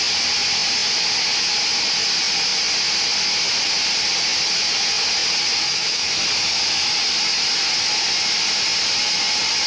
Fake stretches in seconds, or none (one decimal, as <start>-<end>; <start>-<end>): 5.6-6.2